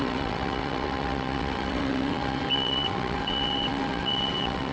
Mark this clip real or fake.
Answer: fake